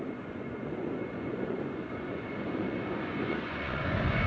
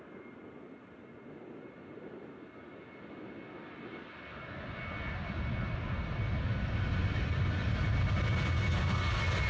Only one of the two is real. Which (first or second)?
second